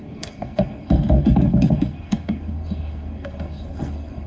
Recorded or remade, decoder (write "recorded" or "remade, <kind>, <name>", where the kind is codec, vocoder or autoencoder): remade, codec, SNAC